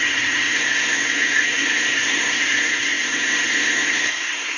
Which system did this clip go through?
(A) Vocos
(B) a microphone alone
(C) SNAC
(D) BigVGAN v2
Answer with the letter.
C